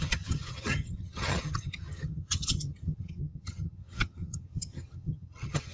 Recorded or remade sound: remade